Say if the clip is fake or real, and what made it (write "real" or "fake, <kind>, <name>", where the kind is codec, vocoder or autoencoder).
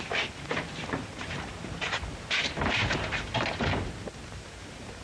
fake, vocoder, BigVGAN v2